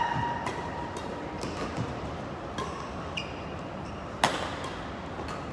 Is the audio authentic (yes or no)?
yes